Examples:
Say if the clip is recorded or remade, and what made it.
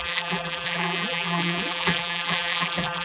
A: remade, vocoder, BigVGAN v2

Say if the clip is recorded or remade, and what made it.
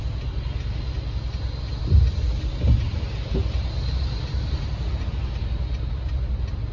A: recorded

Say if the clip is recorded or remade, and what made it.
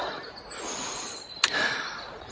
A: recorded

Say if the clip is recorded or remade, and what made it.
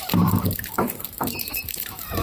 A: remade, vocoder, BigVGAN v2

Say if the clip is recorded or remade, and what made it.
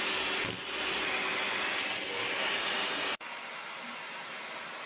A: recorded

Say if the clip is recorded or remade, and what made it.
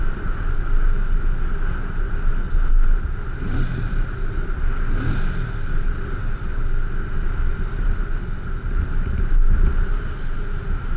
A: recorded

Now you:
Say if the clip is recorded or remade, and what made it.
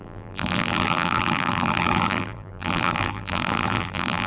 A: remade, vocoder, BigVGAN v2